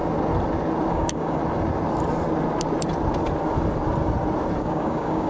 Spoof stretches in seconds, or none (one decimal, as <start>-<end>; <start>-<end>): 0.9-1.4; 4.6-5.3